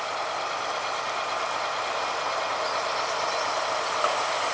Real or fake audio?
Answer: real